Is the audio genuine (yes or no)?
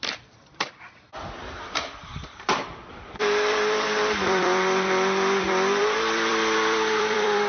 no